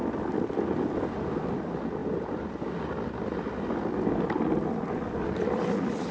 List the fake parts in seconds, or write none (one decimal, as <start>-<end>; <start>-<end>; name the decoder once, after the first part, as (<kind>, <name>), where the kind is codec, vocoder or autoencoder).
none